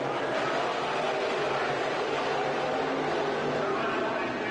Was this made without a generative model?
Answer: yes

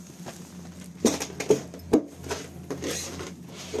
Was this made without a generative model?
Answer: yes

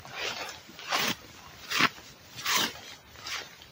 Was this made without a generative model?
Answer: yes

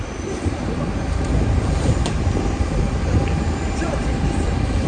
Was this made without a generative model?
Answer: no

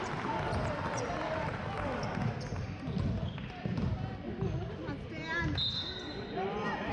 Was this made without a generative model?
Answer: yes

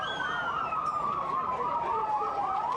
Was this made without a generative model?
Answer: no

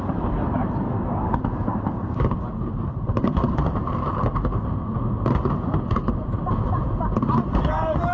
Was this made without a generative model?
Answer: no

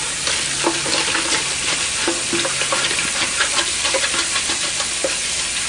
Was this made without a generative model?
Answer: yes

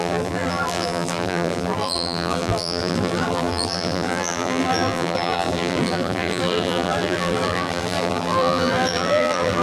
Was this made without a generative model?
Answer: no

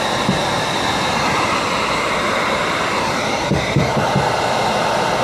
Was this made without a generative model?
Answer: no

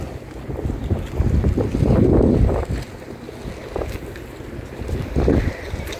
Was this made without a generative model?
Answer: yes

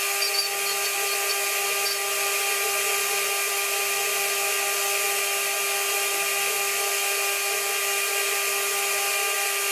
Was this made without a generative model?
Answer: yes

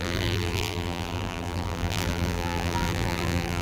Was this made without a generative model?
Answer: no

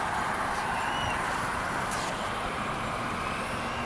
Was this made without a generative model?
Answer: yes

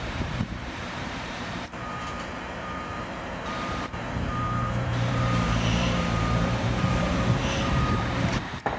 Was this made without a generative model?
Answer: no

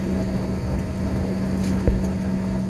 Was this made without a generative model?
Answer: yes